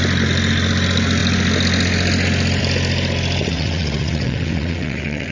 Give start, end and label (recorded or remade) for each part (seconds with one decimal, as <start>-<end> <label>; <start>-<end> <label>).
0.0-3.4 recorded; 3.4-5.3 remade